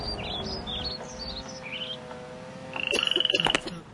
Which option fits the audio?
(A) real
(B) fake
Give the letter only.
A